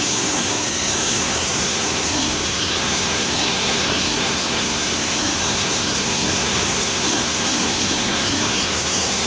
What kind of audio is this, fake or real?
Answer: fake